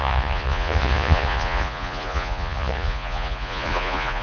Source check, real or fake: fake